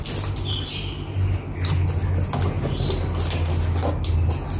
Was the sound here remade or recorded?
recorded